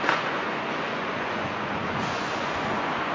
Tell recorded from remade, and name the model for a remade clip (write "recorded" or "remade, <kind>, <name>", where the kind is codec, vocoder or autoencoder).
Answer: remade, vocoder, Vocos